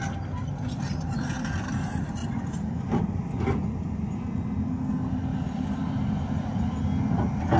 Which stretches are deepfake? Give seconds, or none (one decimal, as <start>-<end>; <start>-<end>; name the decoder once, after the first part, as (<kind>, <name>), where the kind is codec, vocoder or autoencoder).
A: 2.2-3.0 (vocoder, BigVGAN v2); 5.3-6.8

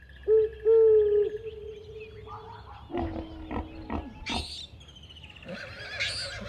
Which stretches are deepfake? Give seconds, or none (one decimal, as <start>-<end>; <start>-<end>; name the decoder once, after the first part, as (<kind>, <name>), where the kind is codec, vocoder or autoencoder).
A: none

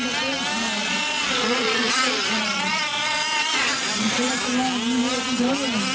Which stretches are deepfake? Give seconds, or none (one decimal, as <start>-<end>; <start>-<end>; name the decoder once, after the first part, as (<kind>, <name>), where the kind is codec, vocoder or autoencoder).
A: 0.8-4.3 (vocoder, Vocos)

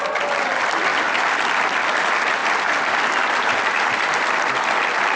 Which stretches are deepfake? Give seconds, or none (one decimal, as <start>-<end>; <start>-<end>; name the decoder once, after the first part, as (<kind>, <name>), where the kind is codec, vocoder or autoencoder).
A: none

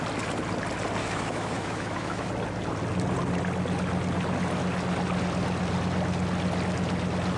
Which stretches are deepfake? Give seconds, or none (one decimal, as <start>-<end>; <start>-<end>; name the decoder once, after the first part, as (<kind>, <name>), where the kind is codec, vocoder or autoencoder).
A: 1.0-2.3 (autoencoder, DAC-VAE)